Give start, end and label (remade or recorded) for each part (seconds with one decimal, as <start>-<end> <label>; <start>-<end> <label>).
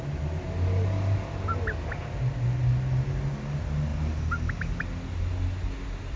0.0-6.2 recorded